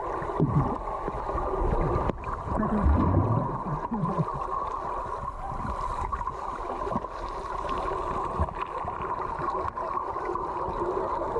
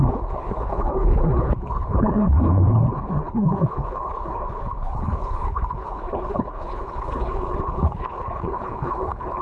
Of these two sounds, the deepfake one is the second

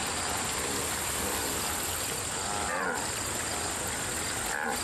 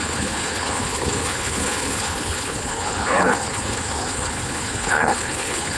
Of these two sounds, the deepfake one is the second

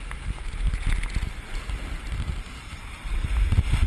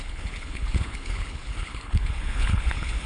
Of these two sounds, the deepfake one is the second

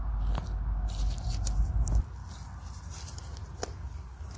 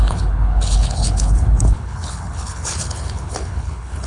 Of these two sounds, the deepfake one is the second